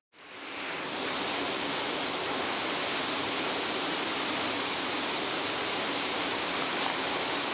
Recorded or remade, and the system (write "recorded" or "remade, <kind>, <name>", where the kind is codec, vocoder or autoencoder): recorded